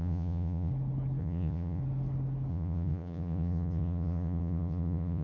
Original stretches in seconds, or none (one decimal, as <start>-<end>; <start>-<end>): 0.7-1.2; 1.8-2.5